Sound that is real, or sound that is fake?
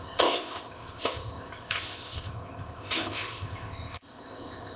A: fake